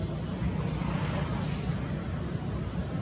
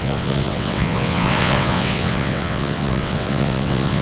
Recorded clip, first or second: first